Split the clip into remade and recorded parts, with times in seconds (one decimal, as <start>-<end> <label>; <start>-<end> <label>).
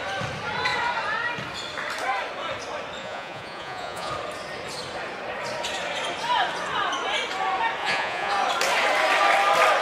0.0-3.0 recorded; 3.0-4.1 remade; 4.1-7.8 recorded; 7.8-8.3 remade; 8.3-9.8 recorded